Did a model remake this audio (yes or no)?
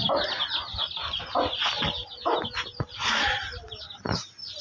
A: no